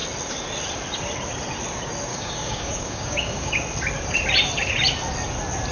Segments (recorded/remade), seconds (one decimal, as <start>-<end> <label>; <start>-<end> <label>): 0.0-2.1 recorded; 2.1-3.5 remade; 3.5-5.7 recorded